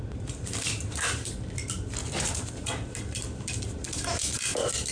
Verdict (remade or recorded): remade